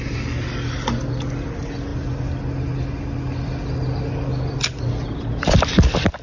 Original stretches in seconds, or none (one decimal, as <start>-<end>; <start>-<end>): 0.0-6.2